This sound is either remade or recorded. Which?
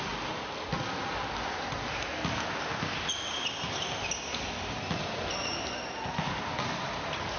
recorded